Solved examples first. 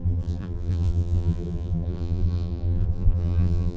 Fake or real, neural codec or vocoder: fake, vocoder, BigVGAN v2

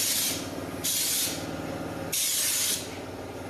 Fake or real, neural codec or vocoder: real